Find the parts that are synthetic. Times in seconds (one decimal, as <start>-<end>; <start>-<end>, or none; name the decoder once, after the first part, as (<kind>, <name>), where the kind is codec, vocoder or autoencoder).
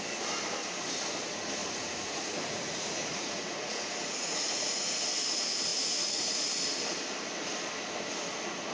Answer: 1.6-5.0 (vocoder, Vocos); 5.7-6.5